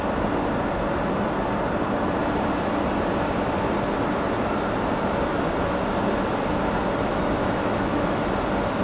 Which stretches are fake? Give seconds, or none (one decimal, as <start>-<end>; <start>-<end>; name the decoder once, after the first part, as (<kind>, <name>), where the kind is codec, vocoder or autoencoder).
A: 7.1-8.2 (autoencoder, DAC-VAE)